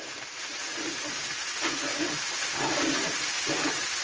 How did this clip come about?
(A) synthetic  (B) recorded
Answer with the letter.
B